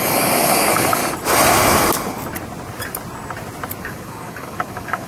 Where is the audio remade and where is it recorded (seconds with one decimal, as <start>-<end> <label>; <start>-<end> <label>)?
0.0-1.0 remade; 1.0-3.8 recorded; 3.8-5.1 remade